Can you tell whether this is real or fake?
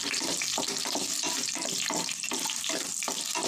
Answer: real